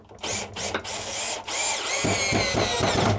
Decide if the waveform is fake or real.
real